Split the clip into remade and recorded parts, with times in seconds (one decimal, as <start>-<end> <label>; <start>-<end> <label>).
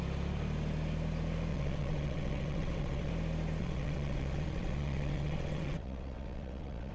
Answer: 0.0-1.5 recorded; 1.5-3.1 remade; 3.1-3.6 recorded; 3.6-6.9 remade